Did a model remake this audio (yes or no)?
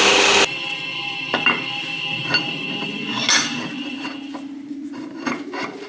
no